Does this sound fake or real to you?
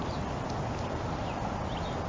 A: real